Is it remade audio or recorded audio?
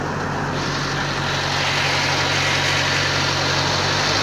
recorded